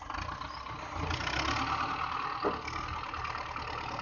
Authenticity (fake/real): real